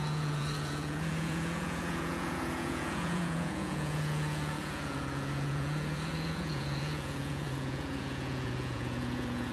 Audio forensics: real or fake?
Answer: fake